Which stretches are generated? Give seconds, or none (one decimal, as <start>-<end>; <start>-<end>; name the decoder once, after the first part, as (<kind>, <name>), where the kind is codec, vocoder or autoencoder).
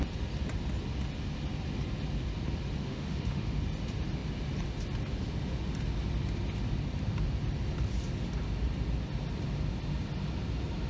2.8-3.6 (autoencoder, DAC-VAE)